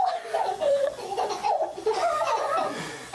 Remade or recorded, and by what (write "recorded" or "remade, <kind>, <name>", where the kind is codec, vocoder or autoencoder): remade, vocoder, Vocos